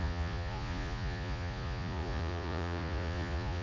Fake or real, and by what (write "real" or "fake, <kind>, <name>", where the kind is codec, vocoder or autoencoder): fake, vocoder, Vocos